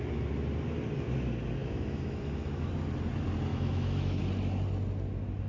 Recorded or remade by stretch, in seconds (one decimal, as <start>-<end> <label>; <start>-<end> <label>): 0.0-1.6 recorded; 1.6-2.7 remade; 2.7-3.5 recorded; 3.5-4.2 remade; 4.2-5.5 recorded